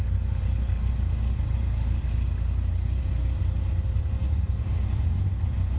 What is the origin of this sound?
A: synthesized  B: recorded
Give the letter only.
B